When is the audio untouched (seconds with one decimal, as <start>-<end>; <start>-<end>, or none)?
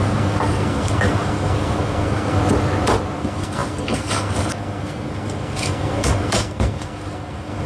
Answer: 2.4-3.2